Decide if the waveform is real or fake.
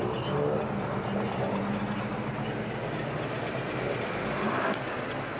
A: real